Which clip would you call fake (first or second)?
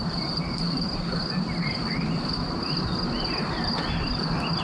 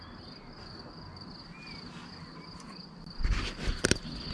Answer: first